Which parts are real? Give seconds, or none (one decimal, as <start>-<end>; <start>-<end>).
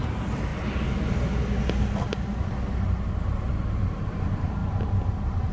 0.5-3.8; 4.6-5.5